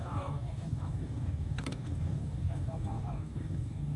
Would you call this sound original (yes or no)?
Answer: no